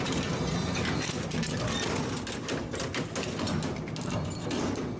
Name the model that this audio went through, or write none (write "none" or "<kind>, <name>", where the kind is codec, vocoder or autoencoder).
none